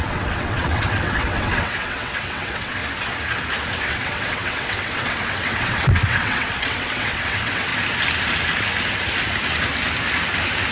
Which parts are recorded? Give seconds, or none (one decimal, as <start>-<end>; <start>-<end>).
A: 2.8-3.7; 7.7-10.7